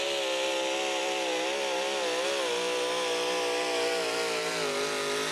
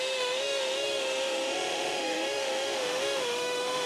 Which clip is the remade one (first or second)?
second